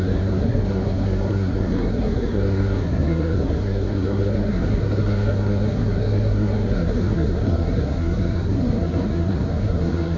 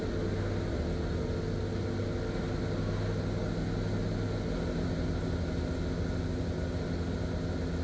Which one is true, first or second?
second